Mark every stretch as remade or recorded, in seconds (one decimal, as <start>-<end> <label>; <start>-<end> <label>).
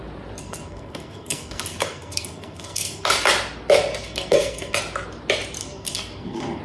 0.0-0.4 recorded; 0.4-3.1 remade; 3.1-3.9 recorded; 3.9-4.8 remade; 4.8-5.6 recorded; 5.6-6.6 remade